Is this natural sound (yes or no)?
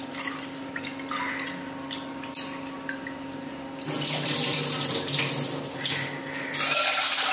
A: yes